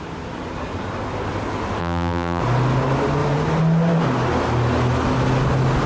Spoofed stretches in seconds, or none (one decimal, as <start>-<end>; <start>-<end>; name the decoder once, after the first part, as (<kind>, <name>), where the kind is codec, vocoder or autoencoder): 1.8-2.4 (vocoder, BigVGAN v2)